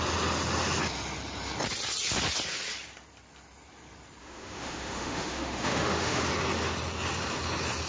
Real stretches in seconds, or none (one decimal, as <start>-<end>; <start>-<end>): 0.0-4.2; 6.2-7.9